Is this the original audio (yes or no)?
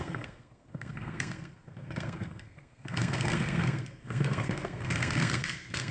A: no